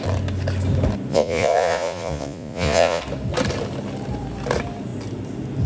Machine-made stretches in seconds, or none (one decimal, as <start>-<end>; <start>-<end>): 1.1-3.0